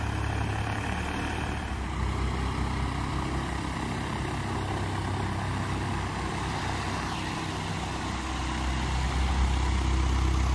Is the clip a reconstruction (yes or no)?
no